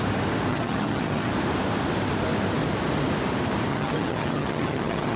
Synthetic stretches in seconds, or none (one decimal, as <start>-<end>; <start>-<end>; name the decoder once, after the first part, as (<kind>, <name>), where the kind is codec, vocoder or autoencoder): 0.5-1.3 (vocoder, HiFi-GAN); 3.7-5.2

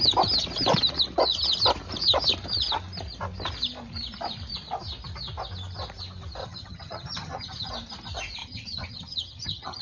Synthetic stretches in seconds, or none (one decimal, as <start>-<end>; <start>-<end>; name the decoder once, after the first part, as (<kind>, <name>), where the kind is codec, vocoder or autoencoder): 6.4-7.7 (vocoder, HiFi-GAN); 8.4-9.8